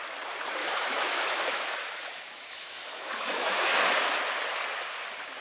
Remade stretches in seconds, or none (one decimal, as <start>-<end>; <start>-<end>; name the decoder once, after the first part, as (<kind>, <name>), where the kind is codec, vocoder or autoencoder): 0.6-3.8 (autoencoder, DAC-VAE)